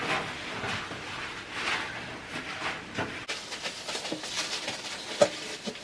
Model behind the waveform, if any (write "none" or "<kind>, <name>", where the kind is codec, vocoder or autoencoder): none